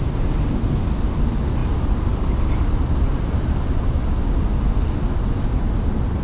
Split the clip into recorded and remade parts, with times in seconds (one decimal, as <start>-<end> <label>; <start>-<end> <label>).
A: 0.0-6.2 recorded